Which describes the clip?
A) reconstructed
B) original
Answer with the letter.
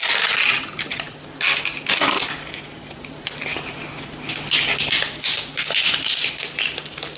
B